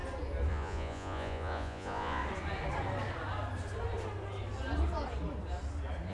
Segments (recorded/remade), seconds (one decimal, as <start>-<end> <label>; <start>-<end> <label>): 0.0-0.5 recorded; 0.5-2.2 remade; 2.2-6.1 recorded

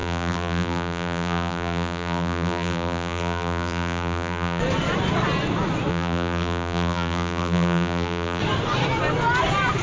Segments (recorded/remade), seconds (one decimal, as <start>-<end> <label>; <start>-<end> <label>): 0.0-4.6 remade; 4.6-5.9 recorded; 5.9-8.4 remade; 8.4-9.8 recorded